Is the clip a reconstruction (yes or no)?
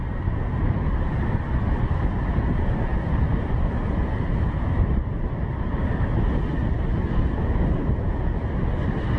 no